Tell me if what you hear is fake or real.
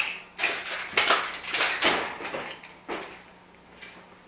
real